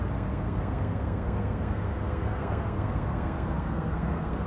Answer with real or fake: fake